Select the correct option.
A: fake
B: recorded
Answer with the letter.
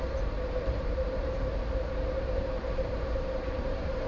A